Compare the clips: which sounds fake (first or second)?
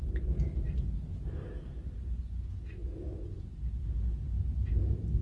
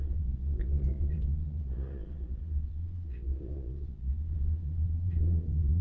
second